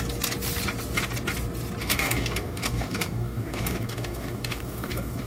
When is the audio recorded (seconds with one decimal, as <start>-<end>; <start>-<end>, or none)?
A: 0.0-1.8